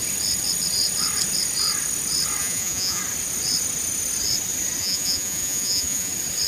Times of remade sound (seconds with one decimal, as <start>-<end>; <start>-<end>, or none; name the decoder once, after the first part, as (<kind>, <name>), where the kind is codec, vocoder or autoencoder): 2.4-3.0 (vocoder, Vocos); 4.8-6.1